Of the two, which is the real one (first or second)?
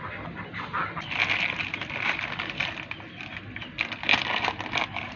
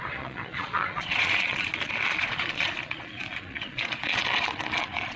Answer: first